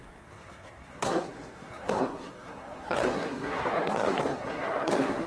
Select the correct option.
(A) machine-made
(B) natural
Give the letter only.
A